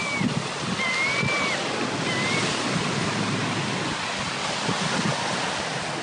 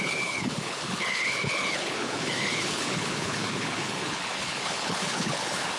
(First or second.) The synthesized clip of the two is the second